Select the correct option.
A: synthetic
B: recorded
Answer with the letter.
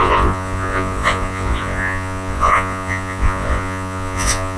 A